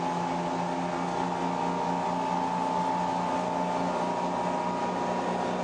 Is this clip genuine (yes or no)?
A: yes